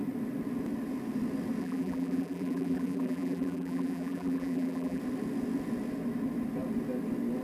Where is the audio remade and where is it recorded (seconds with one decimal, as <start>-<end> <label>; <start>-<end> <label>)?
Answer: 0.0-1.6 recorded; 1.6-5.0 remade; 5.0-7.4 recorded